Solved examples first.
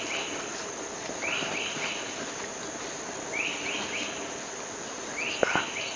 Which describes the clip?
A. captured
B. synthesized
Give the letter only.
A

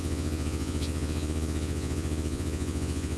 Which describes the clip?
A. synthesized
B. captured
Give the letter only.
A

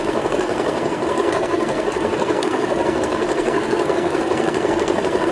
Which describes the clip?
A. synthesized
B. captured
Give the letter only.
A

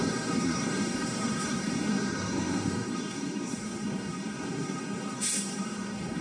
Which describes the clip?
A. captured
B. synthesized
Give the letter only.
B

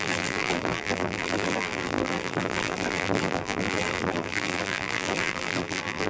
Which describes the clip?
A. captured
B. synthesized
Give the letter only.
B